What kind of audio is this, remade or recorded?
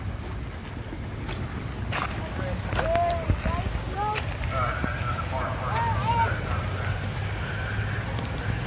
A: recorded